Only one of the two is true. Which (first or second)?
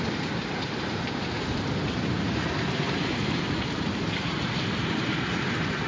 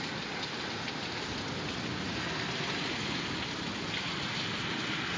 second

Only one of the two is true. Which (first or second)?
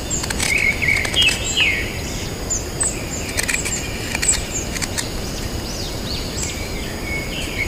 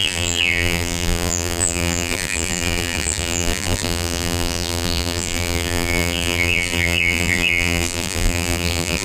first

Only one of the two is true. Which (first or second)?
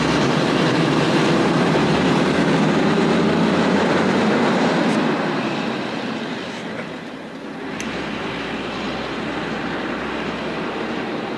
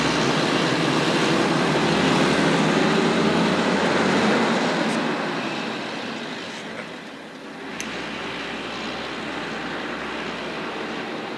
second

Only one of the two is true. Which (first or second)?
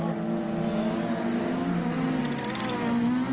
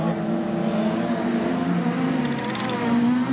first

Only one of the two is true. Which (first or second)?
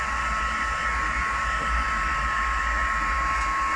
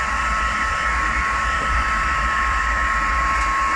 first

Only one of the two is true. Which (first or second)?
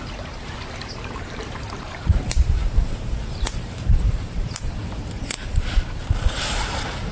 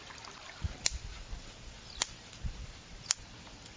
second